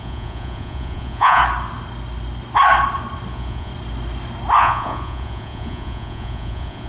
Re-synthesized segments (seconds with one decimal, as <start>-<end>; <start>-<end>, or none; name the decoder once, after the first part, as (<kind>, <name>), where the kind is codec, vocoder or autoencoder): 0.0-1.4 (vocoder, Vocos); 3.3-3.7; 4.6-6.9